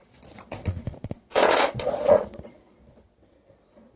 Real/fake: fake